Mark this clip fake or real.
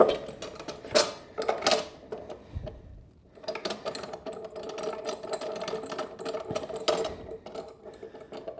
real